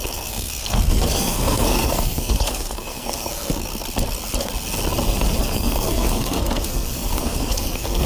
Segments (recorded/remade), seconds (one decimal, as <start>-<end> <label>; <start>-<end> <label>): 0.0-3.7 remade; 3.7-5.4 recorded; 5.4-8.1 remade

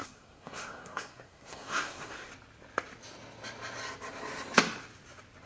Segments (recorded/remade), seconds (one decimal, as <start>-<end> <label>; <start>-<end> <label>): 0.0-2.3 remade; 2.3-5.5 recorded

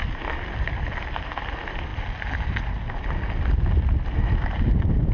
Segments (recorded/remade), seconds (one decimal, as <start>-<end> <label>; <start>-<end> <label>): 0.0-5.1 recorded

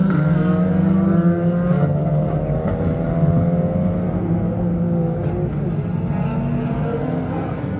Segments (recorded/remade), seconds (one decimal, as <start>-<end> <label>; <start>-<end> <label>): 0.0-0.6 remade; 0.6-1.7 recorded; 1.7-2.3 remade; 2.3-7.0 recorded; 7.0-7.8 remade

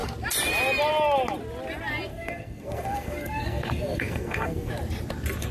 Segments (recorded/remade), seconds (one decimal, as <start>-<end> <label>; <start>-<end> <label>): 0.0-2.1 recorded; 2.1-4.7 remade; 4.7-5.5 recorded